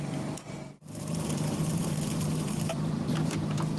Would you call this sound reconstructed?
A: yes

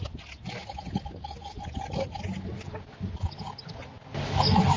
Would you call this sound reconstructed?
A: no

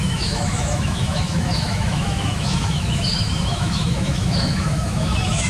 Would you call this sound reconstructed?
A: yes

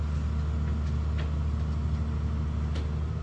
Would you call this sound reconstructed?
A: no